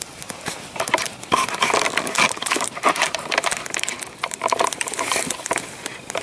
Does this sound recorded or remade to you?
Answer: remade